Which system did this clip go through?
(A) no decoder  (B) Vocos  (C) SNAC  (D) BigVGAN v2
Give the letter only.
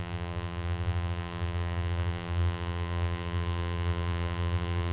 D